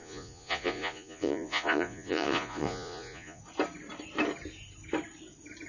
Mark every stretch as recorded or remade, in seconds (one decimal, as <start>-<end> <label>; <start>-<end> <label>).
0.0-3.4 remade; 3.4-5.7 recorded